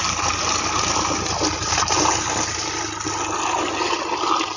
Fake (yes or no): no